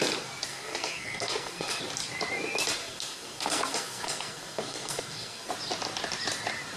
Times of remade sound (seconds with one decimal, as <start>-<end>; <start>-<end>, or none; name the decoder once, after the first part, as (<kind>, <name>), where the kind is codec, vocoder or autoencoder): 0.5-1.8 (codec, SNAC); 2.8-5.5